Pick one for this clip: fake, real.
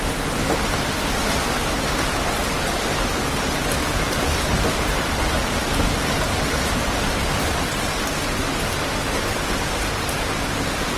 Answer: real